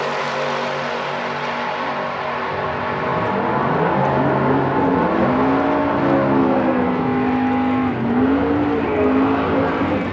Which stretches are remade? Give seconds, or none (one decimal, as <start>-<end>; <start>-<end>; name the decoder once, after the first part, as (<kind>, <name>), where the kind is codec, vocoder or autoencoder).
none